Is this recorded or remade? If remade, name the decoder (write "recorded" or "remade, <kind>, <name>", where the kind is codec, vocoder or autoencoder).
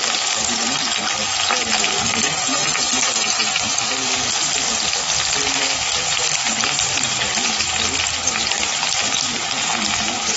recorded